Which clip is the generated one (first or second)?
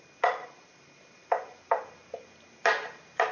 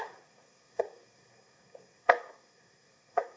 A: second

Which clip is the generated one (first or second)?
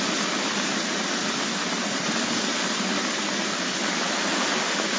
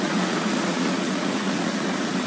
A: second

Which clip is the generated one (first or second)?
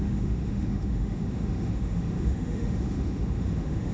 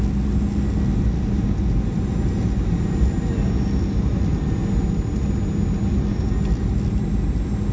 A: first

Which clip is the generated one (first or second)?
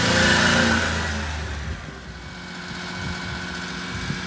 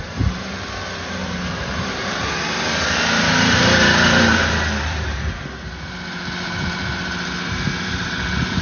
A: second